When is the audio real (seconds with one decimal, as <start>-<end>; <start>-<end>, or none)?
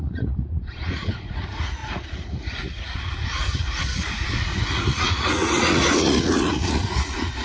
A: none